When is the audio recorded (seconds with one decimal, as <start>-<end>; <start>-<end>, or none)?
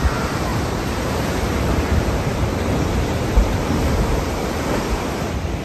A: none